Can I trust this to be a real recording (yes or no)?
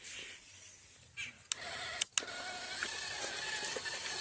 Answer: yes